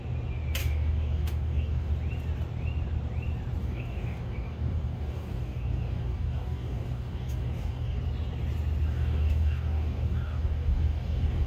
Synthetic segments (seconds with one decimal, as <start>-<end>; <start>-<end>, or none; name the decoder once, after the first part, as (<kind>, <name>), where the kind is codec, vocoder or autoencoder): 0.6-1.9 (codec, DAC); 3.6-8.0; 8.9-11.5